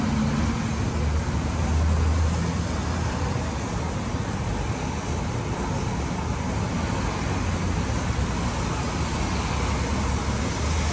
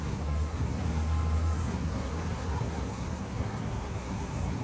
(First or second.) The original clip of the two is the first